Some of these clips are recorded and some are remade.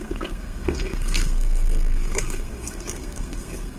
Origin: remade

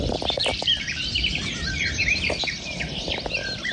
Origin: remade